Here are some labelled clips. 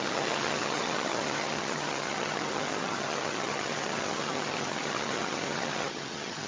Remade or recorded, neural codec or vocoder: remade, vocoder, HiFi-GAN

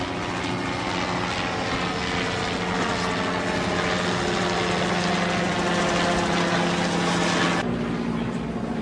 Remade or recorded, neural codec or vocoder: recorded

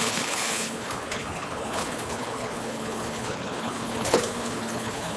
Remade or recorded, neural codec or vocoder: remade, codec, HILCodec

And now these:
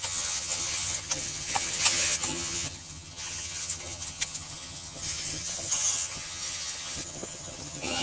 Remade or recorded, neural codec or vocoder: remade, vocoder, HiFi-GAN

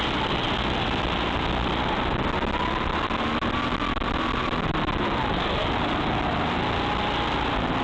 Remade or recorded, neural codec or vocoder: recorded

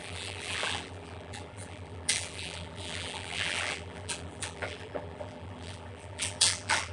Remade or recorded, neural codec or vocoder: remade, vocoder, BigVGAN v2